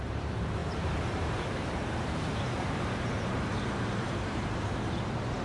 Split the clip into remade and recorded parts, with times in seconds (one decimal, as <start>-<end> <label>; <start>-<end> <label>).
0.0-5.4 remade